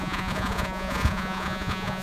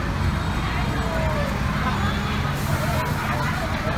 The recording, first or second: second